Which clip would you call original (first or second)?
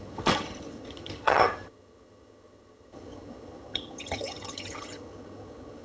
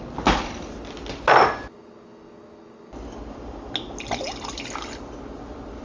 second